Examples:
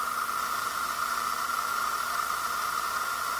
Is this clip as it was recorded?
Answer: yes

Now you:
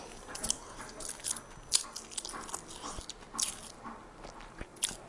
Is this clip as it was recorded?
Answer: yes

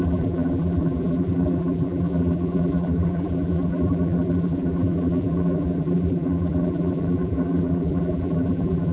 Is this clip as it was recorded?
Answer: no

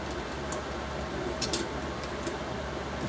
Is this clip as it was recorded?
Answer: yes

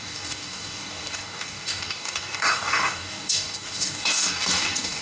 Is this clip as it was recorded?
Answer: no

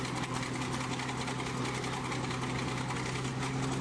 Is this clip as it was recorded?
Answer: yes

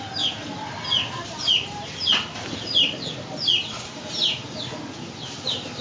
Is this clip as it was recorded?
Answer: yes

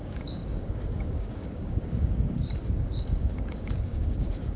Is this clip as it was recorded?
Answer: no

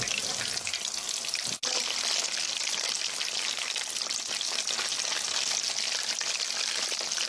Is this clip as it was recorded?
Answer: yes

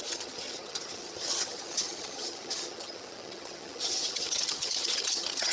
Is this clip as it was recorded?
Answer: no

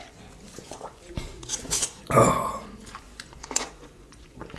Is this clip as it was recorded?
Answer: no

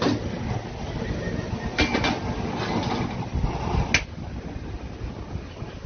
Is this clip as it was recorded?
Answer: yes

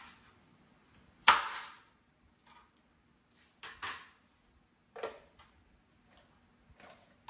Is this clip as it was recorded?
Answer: yes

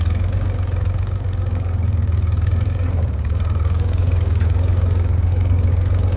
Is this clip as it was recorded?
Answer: no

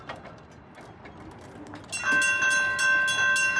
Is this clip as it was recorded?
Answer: yes